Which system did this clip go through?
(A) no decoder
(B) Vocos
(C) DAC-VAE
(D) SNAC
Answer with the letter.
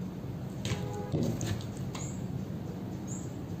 A